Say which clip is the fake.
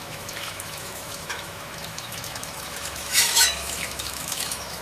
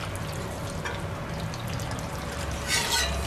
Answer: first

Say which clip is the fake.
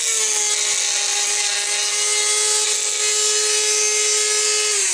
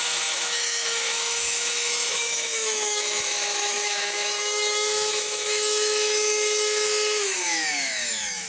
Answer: second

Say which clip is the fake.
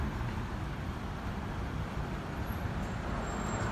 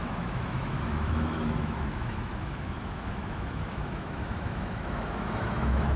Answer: second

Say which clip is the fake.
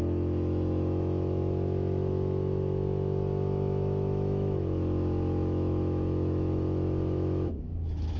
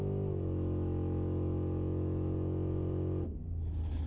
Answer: first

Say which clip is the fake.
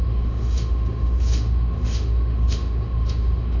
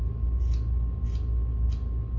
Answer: first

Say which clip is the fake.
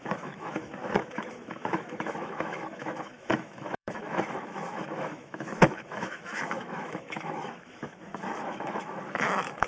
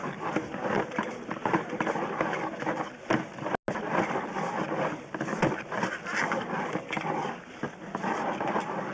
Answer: first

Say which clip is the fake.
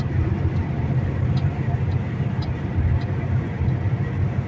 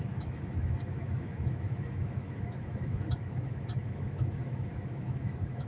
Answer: second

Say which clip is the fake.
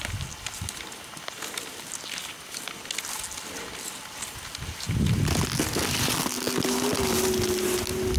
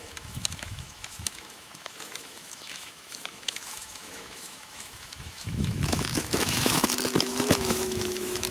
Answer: second